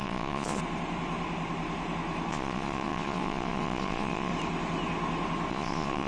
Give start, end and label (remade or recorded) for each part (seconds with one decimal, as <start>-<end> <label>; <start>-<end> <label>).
0.0-0.6 remade; 0.6-2.3 recorded; 2.3-4.3 remade; 4.3-5.5 recorded; 5.5-6.1 remade